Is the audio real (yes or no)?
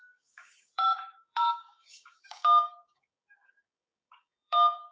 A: no